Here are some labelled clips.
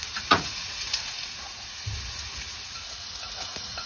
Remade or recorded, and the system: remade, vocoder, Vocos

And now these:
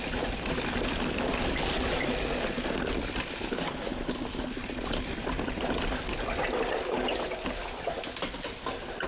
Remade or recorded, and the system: recorded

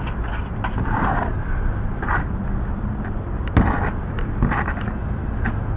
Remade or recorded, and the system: recorded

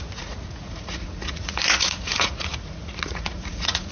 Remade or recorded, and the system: remade, vocoder, Vocos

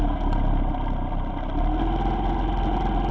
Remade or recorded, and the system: recorded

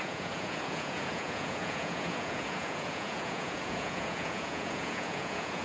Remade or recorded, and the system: remade, vocoder, Vocos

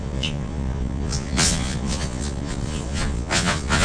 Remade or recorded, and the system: remade, vocoder, Vocos